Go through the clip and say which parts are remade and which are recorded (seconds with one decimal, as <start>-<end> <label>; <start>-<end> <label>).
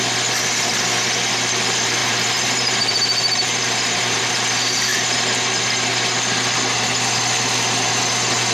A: 0.0-2.0 recorded; 2.0-4.3 remade; 4.3-8.5 recorded